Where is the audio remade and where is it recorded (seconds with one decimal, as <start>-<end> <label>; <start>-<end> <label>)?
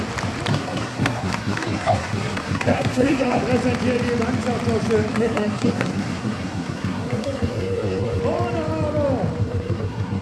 0.0-0.5 recorded; 0.5-3.4 remade; 3.4-5.1 recorded; 5.1-8.2 remade; 8.2-9.4 recorded; 9.4-10.2 remade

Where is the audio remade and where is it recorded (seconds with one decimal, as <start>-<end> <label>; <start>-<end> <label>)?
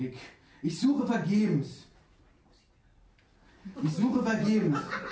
0.0-5.1 recorded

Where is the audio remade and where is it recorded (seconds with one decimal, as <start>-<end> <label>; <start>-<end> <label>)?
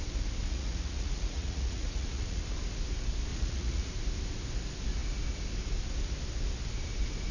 0.0-0.4 recorded; 0.4-2.4 remade; 2.4-3.3 recorded; 3.3-3.9 remade; 3.9-7.3 recorded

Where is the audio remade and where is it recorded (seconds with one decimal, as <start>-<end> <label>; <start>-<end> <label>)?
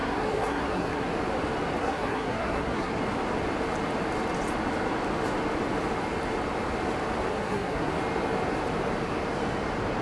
0.0-1.1 remade; 1.1-1.8 recorded; 1.8-3.0 remade; 3.0-7.3 recorded; 7.3-7.9 remade; 7.9-10.0 recorded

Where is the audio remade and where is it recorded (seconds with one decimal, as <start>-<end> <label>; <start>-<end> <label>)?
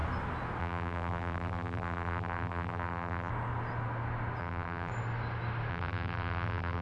0.0-0.6 recorded; 0.6-3.3 remade; 3.3-4.4 recorded; 4.4-4.9 remade; 4.9-5.7 recorded; 5.7-6.8 remade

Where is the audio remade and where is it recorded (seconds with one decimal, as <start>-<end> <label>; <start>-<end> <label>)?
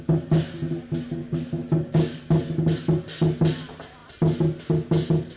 0.0-1.2 recorded; 1.2-2.2 remade; 2.2-5.4 recorded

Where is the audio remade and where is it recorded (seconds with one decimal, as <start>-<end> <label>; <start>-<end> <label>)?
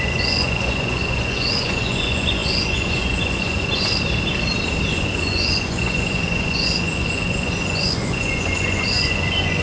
0.0-3.9 remade; 3.9-4.9 recorded; 4.9-9.6 remade